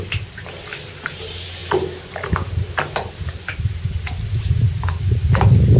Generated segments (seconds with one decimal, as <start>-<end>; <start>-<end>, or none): none